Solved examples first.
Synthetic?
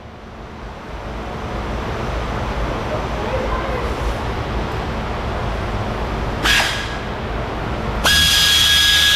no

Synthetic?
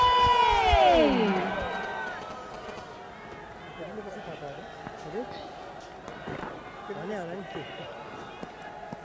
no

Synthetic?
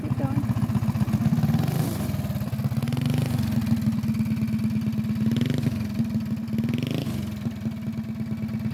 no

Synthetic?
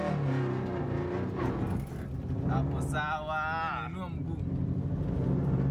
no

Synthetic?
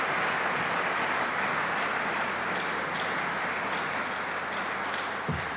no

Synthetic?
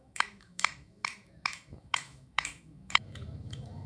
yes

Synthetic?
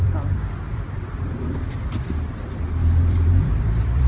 yes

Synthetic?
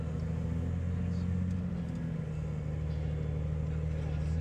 no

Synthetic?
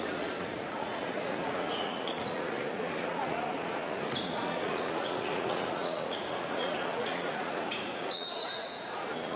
yes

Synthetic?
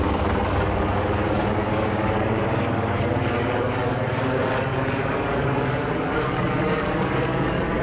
yes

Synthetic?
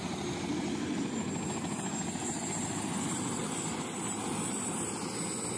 no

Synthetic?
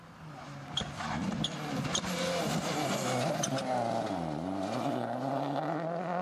no